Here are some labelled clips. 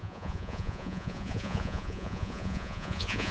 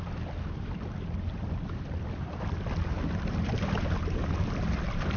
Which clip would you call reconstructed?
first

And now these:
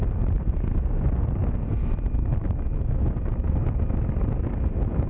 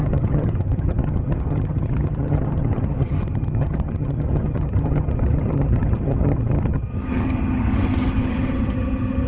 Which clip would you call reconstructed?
second